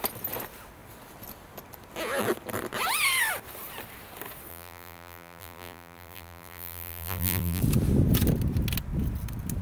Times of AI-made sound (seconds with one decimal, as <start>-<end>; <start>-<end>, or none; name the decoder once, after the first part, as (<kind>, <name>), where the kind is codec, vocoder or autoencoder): 4.5-7.6 (vocoder, BigVGAN v2)